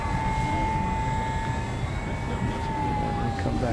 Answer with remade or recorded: recorded